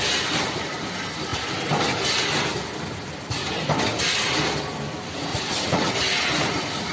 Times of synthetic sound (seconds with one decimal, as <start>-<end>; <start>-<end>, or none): 5.3-5.9